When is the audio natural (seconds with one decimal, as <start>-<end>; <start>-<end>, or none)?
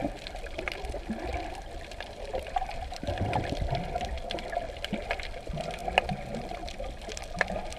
0.0-1.3; 3.7-7.8